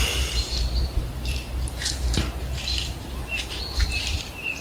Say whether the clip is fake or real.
fake